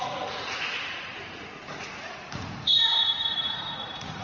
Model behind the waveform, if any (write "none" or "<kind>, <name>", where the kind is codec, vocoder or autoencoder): vocoder, Vocos